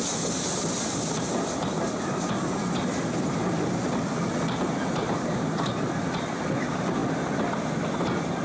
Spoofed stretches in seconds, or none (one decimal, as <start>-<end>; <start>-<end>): 5.0-6.5